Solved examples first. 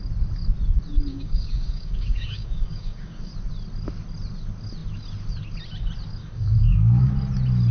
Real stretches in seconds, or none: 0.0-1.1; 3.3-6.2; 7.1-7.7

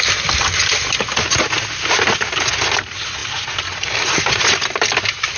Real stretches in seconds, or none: 0.0-5.4

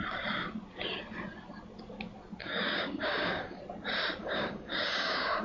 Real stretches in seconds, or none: 0.0-2.4; 3.6-4.2

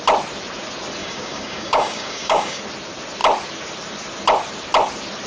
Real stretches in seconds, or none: 0.0-1.0; 2.6-5.3

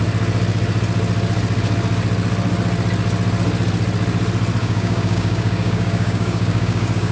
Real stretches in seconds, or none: 0.0-4.6